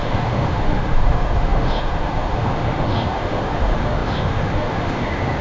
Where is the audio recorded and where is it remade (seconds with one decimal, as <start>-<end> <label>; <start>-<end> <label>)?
0.0-5.4 remade